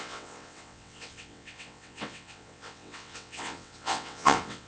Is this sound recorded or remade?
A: remade